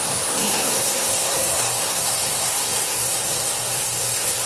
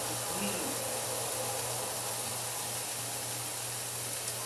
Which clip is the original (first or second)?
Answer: second